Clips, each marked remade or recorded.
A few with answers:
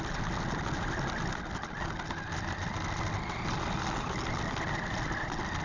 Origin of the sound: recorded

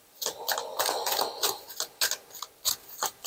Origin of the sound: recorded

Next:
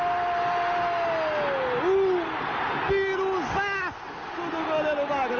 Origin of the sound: recorded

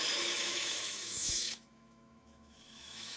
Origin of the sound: remade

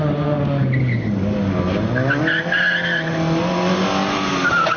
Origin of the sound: recorded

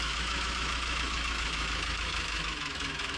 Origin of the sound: remade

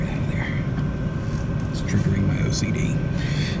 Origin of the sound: recorded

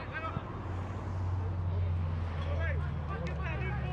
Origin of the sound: recorded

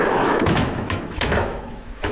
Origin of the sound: remade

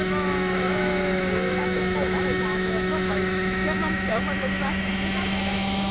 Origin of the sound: remade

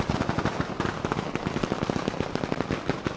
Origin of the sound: recorded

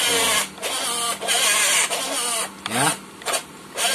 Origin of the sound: recorded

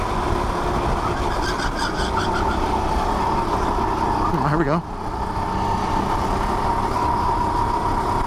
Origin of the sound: recorded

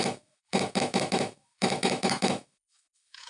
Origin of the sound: remade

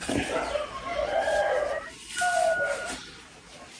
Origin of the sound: recorded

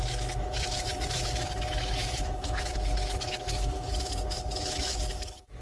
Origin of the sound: remade